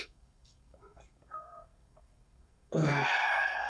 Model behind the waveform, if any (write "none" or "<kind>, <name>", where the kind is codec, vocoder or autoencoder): codec, SNAC